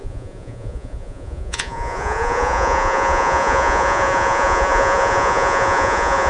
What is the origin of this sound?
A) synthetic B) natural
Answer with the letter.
A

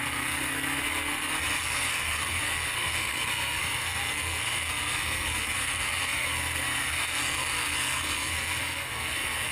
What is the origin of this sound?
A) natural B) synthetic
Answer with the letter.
B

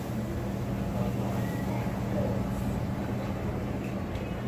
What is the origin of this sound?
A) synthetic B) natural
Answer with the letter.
B